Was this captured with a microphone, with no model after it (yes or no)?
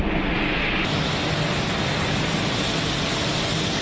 yes